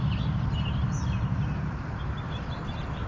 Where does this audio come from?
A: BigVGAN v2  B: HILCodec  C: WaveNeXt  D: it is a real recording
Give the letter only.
A